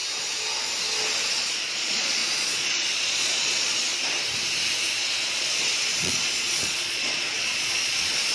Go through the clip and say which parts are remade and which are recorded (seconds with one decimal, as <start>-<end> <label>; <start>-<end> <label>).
0.0-1.3 recorded; 1.3-3.9 remade; 3.9-5.0 recorded; 5.0-8.3 remade